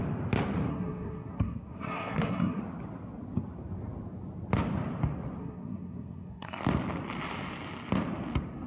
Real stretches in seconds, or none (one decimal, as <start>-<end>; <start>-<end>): 0.0-0.7; 2.6-5.4; 6.6-8.7